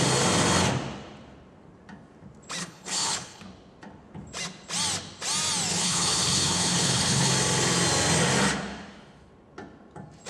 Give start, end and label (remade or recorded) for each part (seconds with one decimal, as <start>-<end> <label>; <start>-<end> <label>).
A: 0.0-2.6 recorded; 2.6-3.4 remade; 3.4-5.7 recorded; 5.7-7.3 remade; 7.3-10.3 recorded